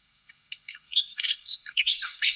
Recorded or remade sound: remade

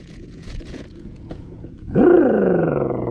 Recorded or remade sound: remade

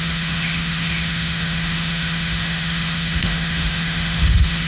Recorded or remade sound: remade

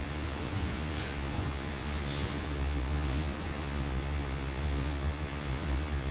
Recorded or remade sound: remade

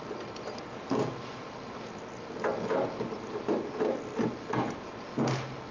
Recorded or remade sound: recorded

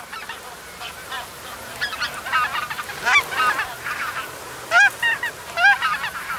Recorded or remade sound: recorded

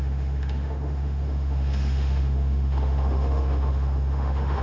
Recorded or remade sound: remade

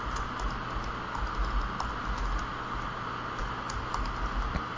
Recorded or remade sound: recorded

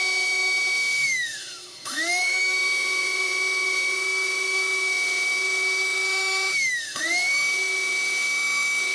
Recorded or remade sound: remade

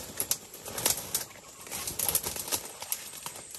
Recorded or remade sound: recorded